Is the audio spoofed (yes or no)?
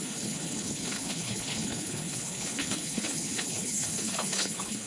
yes